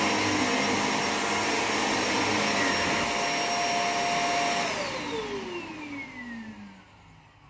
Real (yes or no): yes